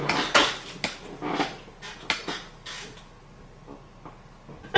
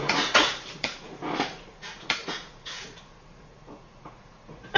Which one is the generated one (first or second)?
second